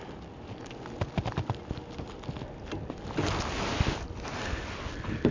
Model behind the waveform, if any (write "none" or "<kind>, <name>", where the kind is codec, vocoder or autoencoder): none